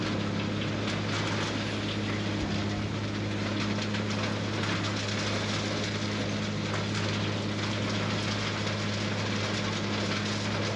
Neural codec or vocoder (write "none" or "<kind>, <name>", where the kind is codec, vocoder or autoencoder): none